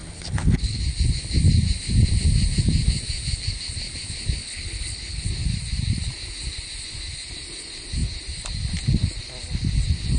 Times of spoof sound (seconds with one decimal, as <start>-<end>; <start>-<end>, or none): 0.0-0.8; 4.4-5.2